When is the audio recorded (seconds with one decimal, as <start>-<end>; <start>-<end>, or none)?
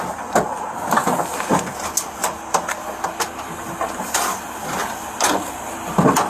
0.0-6.3